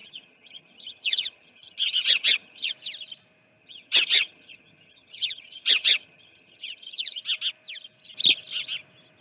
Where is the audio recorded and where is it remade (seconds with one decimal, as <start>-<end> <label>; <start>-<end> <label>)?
0.0-2.7 remade; 2.7-3.6 recorded; 3.6-7.2 remade; 7.2-9.2 recorded